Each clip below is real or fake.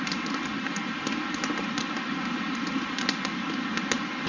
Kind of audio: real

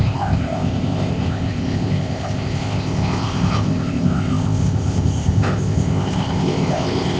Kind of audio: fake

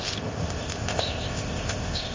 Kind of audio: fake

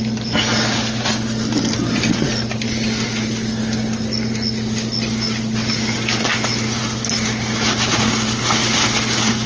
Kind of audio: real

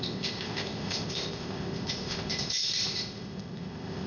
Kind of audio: fake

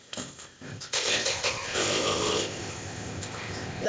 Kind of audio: fake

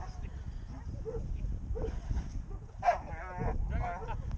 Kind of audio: real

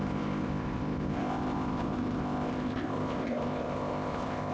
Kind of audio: fake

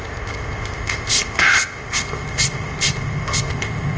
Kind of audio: fake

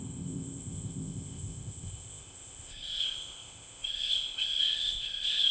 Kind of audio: fake